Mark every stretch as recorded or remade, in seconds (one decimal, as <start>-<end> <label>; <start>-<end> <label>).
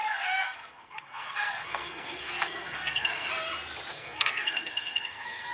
0.0-3.3 remade; 3.3-3.9 recorded; 3.9-5.5 remade